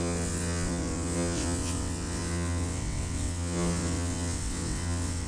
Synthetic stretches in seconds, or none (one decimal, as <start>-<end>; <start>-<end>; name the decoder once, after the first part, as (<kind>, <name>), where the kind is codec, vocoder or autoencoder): 0.0-5.3 (vocoder, WaveNeXt)